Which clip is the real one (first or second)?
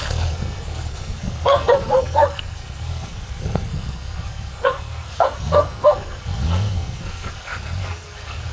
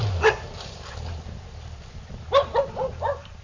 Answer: second